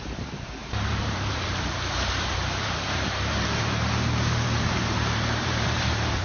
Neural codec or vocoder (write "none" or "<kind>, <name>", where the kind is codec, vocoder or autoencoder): vocoder, BigVGAN v2